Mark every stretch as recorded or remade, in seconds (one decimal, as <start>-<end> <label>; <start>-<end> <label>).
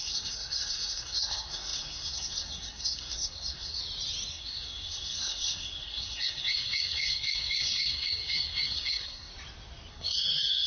0.0-3.8 remade; 3.8-4.3 recorded; 4.3-9.3 remade; 9.3-9.9 recorded; 9.9-10.7 remade